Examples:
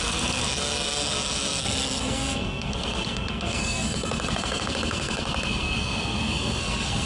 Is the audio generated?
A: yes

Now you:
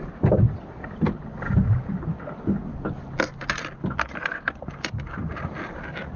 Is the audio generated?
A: no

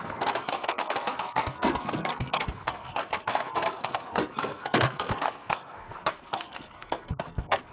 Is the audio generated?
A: yes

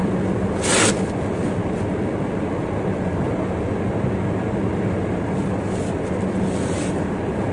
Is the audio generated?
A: no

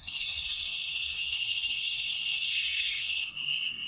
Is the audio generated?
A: yes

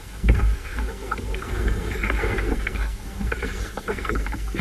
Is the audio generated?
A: yes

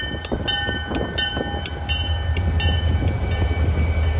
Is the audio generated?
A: no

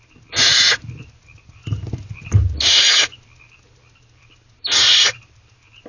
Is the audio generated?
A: no